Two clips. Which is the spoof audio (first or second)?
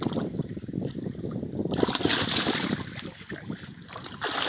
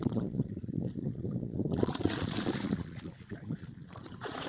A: second